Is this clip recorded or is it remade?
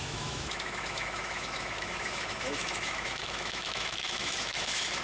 remade